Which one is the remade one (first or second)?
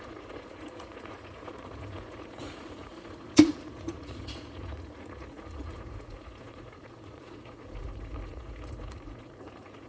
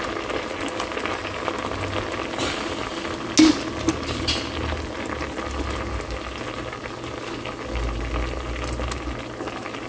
first